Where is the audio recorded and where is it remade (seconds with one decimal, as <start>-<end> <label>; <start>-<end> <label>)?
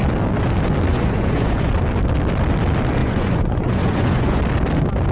0.0-0.9 recorded; 0.9-1.7 remade; 1.7-3.0 recorded; 3.0-4.4 remade; 4.4-5.1 recorded